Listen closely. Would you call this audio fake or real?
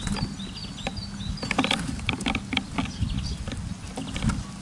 real